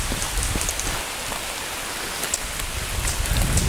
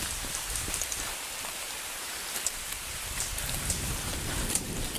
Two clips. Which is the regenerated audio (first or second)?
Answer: second